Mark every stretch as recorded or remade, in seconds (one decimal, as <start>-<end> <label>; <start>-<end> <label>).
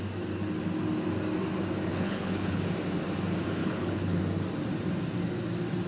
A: 0.0-1.9 recorded; 1.9-2.6 remade; 2.6-3.6 recorded; 3.6-4.2 remade; 4.2-5.9 recorded